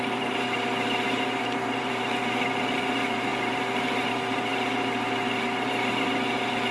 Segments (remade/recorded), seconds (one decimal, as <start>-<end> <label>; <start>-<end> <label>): 0.0-6.7 remade